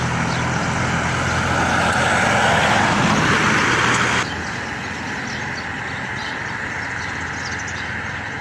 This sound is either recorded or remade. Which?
recorded